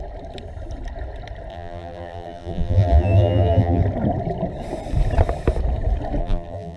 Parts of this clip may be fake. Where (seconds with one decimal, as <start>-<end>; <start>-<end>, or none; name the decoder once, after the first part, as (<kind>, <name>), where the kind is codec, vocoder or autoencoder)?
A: 1.5-3.8 (vocoder, BigVGAN v2); 6.2-6.8